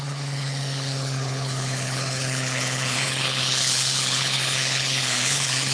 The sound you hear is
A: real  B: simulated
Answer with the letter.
B